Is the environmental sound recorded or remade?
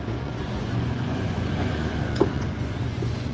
remade